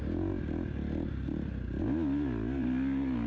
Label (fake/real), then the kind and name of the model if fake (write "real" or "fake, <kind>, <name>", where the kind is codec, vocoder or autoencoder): real